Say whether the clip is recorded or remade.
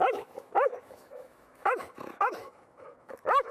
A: remade